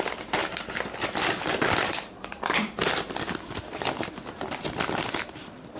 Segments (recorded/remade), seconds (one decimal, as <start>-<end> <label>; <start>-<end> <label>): 0.0-0.4 recorded; 0.4-3.6 remade; 3.6-5.8 recorded